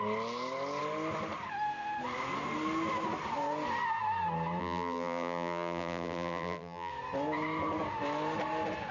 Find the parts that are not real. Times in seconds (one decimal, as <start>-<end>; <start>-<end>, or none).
4.6-6.9